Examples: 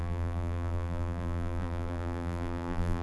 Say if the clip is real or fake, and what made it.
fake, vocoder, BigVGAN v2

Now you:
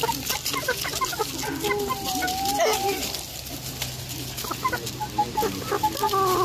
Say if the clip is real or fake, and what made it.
real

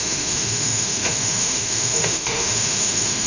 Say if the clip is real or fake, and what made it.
fake, autoencoder, DAC-VAE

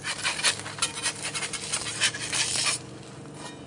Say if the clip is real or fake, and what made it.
real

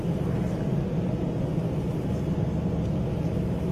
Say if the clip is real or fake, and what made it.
real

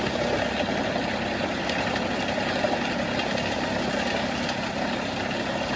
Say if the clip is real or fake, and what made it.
real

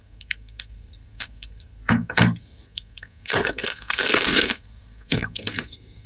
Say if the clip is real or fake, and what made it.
fake, codec, SNAC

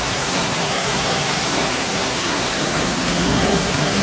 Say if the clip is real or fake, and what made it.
fake, codec, SNAC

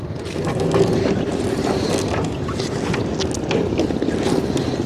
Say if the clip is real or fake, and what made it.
real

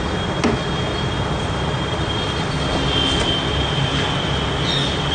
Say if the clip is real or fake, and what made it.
real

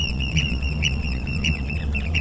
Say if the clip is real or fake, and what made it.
fake, vocoder, Vocos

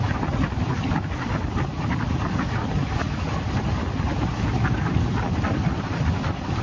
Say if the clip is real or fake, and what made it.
real